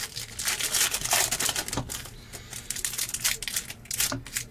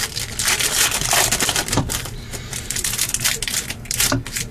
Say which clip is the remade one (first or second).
second